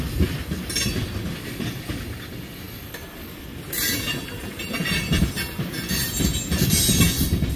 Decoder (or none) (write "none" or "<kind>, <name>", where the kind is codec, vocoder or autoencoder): none